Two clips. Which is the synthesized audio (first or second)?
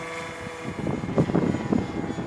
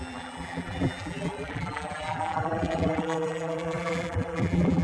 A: second